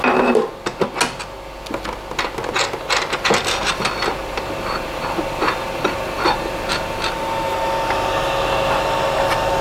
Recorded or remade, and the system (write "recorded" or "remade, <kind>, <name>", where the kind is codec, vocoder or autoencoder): recorded